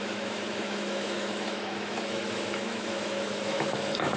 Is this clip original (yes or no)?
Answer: no